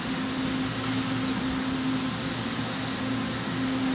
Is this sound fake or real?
real